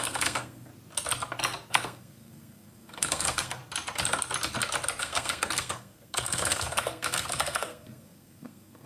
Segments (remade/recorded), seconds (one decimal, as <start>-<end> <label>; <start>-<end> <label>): 0.0-0.7 remade; 0.7-1.7 recorded; 1.7-3.6 remade; 3.6-5.0 recorded; 5.0-8.9 remade